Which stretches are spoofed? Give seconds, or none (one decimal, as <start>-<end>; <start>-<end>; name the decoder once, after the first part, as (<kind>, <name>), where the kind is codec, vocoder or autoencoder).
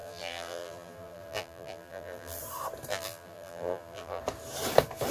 0.0-2.4 (vocoder, BigVGAN v2); 2.9-4.2